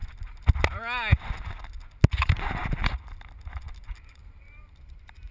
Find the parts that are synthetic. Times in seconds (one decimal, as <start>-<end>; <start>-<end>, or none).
2.2-2.6; 3.9-5.3